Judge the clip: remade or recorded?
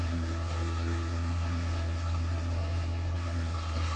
remade